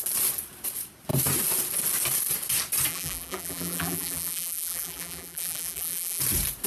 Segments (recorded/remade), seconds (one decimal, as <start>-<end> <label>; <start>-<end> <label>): 0.0-2.9 recorded; 2.9-6.2 remade; 6.2-6.7 recorded